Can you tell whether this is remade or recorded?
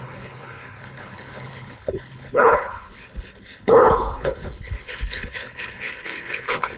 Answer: remade